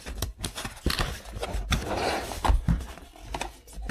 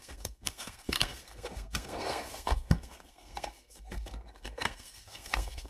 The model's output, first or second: second